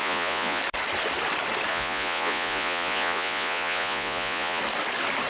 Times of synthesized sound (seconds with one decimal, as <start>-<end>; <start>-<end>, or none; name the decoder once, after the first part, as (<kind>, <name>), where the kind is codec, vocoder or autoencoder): 0.0-0.6 (vocoder, Vocos); 1.7-4.6